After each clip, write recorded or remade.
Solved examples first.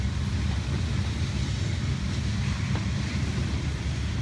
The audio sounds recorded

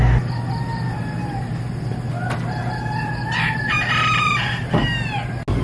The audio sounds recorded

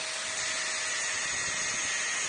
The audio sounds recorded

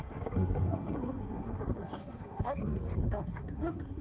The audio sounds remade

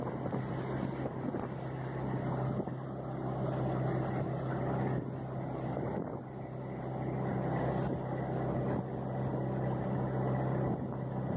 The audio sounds recorded